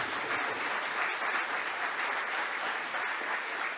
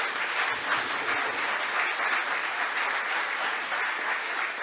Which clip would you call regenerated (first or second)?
first